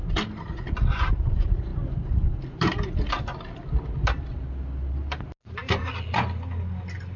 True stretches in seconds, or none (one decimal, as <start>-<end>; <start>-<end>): 0.0-7.2